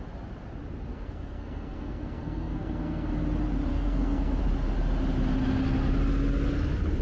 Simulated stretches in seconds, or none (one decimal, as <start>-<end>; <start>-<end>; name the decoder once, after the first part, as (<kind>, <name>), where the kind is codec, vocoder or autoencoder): 0.9-3.1 (codec, SNAC); 3.7-4.4